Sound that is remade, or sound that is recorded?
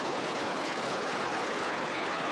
remade